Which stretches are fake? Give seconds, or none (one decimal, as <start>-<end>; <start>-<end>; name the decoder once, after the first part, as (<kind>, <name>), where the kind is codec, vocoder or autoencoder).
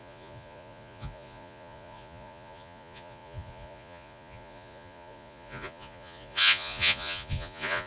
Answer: 0.0-7.9 (vocoder, Vocos)